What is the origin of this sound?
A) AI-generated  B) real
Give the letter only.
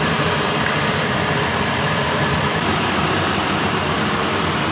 A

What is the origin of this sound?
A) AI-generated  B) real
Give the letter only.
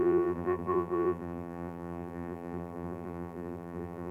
A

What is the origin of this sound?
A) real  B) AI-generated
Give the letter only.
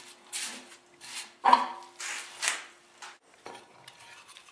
B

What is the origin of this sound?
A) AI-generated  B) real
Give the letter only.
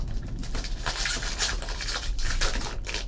A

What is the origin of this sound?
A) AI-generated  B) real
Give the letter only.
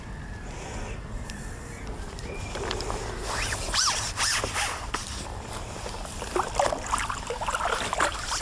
A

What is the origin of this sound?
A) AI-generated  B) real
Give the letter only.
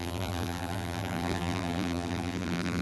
A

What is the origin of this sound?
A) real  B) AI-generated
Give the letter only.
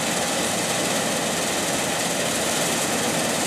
A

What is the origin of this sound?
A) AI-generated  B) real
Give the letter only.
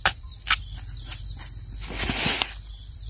A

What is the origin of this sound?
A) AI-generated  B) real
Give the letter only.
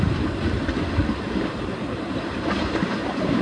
A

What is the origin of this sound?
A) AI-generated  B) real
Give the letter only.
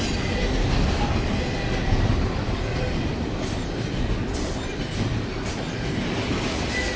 B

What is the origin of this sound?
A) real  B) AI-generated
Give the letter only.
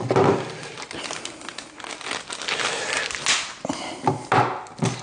A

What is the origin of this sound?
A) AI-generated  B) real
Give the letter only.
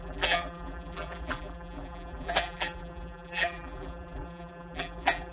A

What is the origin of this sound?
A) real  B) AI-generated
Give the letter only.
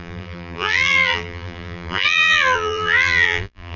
B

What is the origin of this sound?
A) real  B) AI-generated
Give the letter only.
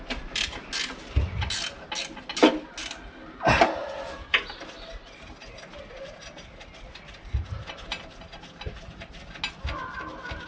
A